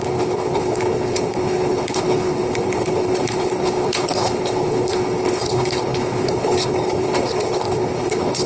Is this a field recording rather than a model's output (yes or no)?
no